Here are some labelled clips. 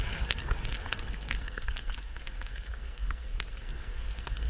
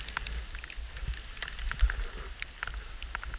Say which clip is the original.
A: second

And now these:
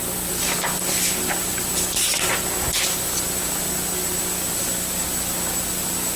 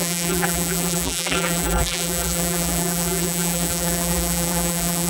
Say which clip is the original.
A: first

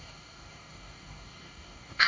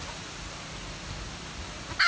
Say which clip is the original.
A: second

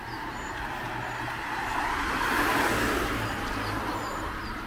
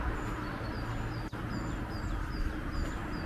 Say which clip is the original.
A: second